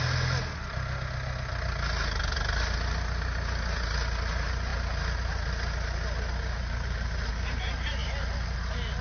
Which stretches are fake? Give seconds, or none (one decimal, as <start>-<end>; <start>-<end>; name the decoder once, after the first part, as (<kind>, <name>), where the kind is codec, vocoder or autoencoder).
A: none